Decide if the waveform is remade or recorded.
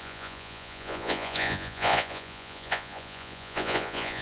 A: remade